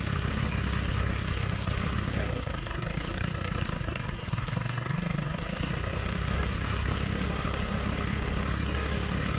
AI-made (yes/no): yes